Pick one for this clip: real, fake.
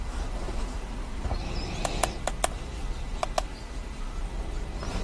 fake